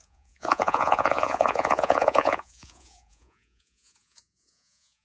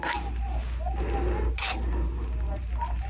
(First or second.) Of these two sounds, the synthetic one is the first